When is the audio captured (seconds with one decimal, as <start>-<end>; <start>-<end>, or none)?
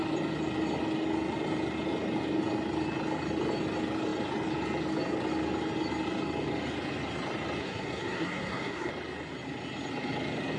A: 0.0-7.6; 8.9-10.6